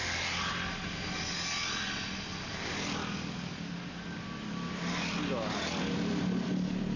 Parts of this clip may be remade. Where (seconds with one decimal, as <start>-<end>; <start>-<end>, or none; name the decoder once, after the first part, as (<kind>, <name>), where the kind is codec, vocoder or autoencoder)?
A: none